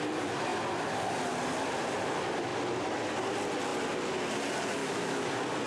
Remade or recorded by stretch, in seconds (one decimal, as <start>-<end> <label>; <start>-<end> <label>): 0.0-4.8 recorded; 4.8-5.3 remade; 5.3-5.7 recorded